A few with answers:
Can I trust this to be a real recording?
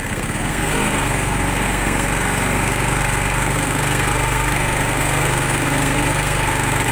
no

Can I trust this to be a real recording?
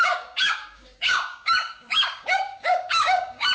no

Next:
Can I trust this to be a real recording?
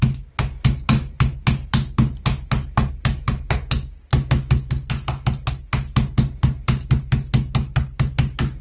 yes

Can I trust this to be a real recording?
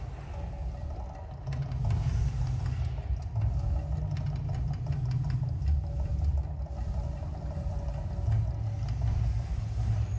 yes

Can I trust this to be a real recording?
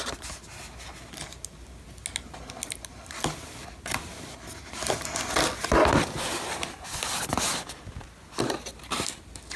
yes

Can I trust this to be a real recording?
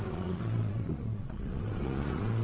no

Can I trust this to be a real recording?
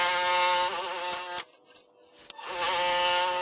yes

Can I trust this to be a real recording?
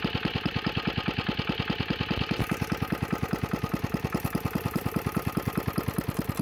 yes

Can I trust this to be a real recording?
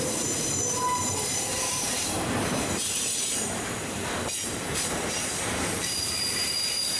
no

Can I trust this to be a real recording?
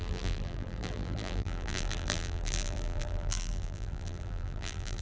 no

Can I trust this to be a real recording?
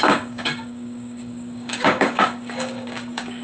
no